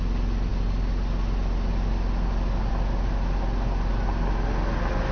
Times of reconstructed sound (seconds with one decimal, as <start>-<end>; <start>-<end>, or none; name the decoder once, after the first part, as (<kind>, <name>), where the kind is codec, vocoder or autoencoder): none